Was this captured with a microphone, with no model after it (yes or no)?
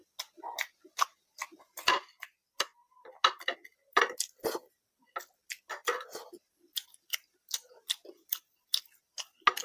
yes